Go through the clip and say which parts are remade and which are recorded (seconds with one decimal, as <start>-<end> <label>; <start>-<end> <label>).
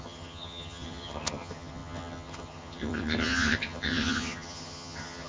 0.0-5.3 remade